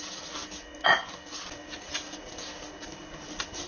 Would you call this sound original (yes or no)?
yes